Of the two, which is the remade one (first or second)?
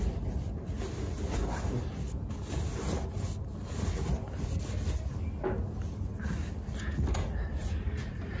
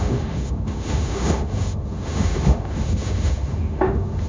second